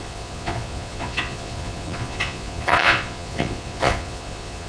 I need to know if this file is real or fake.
fake